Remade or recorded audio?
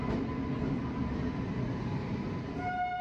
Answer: recorded